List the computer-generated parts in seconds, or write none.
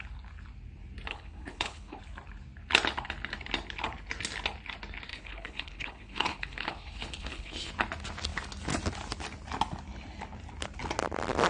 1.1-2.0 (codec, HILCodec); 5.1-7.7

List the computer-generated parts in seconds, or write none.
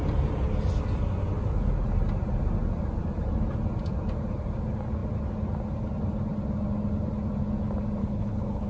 8.0-8.7 (codec, HILCodec)